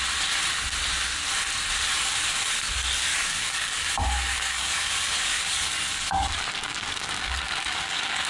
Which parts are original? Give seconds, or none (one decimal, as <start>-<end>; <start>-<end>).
0.0-3.1